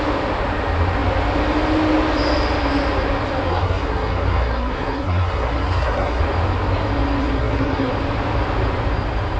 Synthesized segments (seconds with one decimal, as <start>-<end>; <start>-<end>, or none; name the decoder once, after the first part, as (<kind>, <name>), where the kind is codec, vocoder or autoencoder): 3.5-6.2 (codec, SNAC); 7.2-7.9